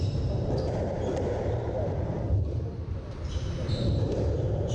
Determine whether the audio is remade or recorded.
remade